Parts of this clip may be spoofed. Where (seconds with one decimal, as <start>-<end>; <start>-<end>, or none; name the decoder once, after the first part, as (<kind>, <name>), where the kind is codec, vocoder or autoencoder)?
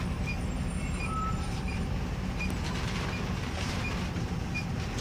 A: 0.8-3.7 (vocoder, BigVGAN v2)